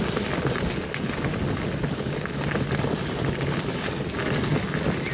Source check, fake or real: real